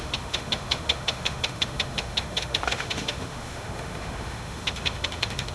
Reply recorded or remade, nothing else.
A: remade